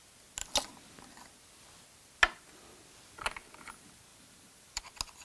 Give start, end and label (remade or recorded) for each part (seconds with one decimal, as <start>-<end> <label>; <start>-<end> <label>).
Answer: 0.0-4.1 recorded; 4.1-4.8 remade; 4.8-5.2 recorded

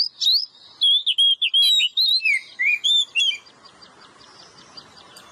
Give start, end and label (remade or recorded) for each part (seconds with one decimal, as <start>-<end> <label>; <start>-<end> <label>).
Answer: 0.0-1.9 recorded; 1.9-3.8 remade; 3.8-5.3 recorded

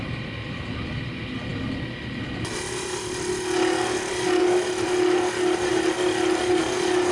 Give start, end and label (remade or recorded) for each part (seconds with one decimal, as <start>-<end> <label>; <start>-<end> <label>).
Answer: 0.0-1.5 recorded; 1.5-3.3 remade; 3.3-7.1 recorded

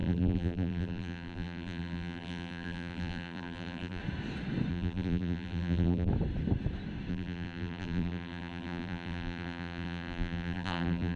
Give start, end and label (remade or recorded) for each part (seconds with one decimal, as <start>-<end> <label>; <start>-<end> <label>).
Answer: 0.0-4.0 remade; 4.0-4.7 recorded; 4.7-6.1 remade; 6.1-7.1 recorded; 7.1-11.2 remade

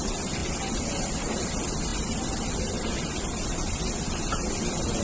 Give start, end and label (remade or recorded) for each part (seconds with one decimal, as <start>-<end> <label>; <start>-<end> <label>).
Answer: 0.0-5.0 recorded